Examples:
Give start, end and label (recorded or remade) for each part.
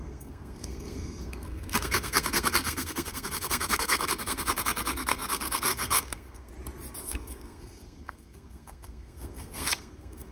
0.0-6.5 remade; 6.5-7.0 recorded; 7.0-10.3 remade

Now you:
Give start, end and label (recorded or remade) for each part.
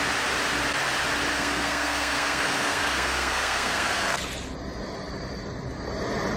0.0-1.3 recorded; 1.3-4.2 remade; 4.2-6.4 recorded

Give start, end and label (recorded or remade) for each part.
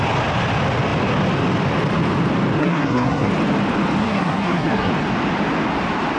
0.0-2.6 recorded; 2.6-3.3 remade; 3.3-4.0 recorded; 4.0-4.9 remade; 4.9-6.2 recorded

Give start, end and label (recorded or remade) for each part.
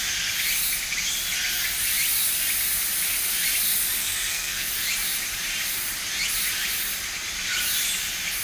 0.0-4.0 recorded; 4.0-4.7 remade; 4.7-8.4 recorded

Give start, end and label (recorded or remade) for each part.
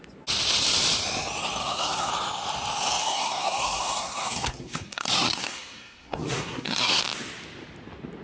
0.0-1.6 recorded; 1.6-2.1 remade; 2.1-3.0 recorded; 3.0-7.0 remade; 7.0-8.2 recorded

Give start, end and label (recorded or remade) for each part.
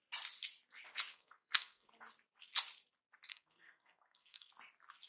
0.0-1.1 recorded; 1.1-1.9 remade; 1.9-3.3 recorded; 3.3-4.5 remade; 4.5-5.1 recorded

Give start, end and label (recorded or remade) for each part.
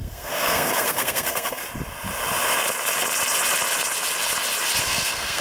0.0-1.6 remade; 1.6-4.8 recorded; 4.8-5.4 remade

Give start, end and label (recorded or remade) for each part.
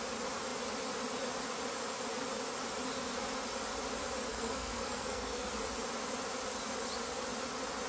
0.0-4.3 recorded; 4.3-5.5 remade; 5.5-7.9 recorded